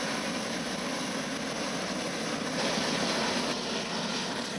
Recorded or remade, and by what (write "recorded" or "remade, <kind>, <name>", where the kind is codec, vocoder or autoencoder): recorded